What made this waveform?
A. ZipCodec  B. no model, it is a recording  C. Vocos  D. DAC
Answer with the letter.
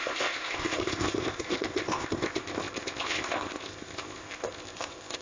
A